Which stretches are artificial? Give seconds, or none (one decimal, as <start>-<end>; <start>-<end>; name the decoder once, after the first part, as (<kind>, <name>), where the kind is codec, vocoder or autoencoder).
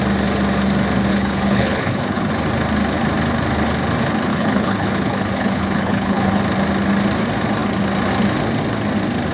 1.1-2.3 (codec, HILCodec); 4.3-6.4